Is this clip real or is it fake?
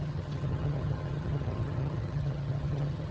fake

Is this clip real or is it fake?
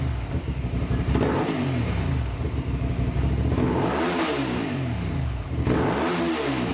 real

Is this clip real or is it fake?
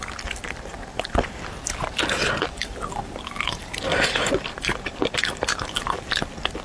fake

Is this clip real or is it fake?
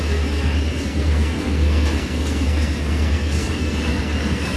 fake